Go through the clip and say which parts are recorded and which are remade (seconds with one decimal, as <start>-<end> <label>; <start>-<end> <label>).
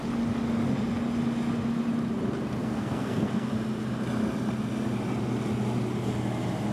0.0-2.6 recorded; 2.6-3.5 remade; 3.5-6.7 recorded